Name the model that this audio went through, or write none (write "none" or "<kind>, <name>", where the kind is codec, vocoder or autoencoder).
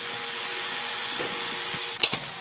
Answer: vocoder, Vocos